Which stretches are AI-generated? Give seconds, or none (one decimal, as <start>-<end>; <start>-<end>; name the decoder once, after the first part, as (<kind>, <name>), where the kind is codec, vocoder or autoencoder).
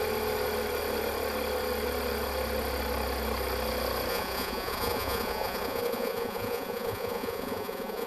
4.1-8.1 (vocoder, Vocos)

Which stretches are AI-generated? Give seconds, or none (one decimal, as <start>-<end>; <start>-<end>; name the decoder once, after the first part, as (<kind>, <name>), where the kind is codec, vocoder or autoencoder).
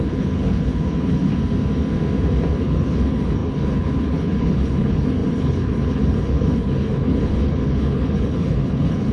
0.0-1.3 (codec, HILCodec); 2.6-9.1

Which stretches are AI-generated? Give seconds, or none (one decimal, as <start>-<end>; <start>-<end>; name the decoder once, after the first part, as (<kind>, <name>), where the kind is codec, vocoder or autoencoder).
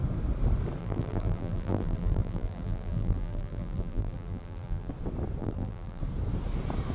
0.8-4.9 (vocoder, BigVGAN v2); 5.4-6.0